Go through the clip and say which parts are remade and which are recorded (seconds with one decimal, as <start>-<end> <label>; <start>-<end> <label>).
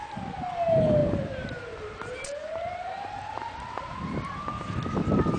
0.0-1.0 recorded; 1.0-4.2 remade; 4.2-5.4 recorded